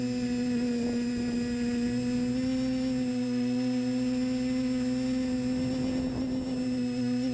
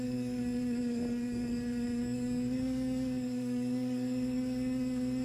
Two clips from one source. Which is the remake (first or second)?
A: second